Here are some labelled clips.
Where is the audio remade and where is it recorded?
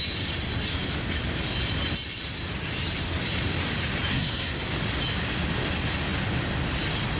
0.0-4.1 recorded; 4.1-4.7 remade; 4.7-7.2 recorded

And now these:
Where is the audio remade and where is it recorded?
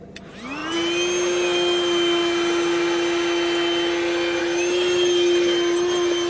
0.0-6.3 recorded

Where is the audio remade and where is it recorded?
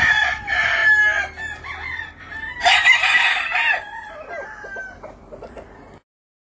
0.0-6.4 recorded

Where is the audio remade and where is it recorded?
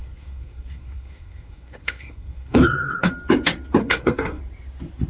0.0-3.1 remade; 3.1-3.8 recorded; 3.8-4.4 remade; 4.4-5.1 recorded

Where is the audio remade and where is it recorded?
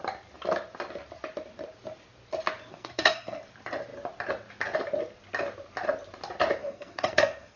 0.0-2.7 recorded; 2.7-3.4 remade; 3.4-6.6 recorded; 6.6-7.6 remade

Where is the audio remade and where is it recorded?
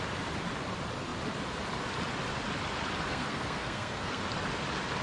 0.0-3.1 recorded; 3.1-4.2 remade; 4.2-5.0 recorded